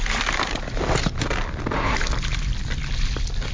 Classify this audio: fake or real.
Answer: real